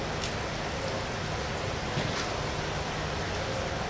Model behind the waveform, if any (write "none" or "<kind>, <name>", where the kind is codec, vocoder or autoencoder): none